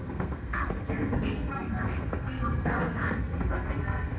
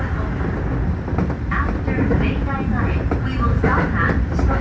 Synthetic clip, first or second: first